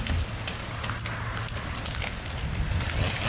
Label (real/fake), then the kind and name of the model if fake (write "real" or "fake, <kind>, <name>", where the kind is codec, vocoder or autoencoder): real